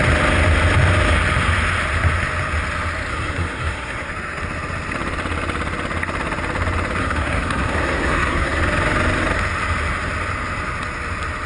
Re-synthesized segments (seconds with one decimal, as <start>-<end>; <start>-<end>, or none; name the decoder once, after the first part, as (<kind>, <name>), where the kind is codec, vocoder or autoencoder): 3.1-4.1 (codec, SNAC); 7.0-8.6